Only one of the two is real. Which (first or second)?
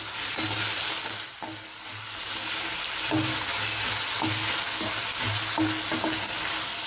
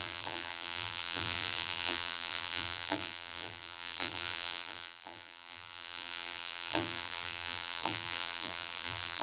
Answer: first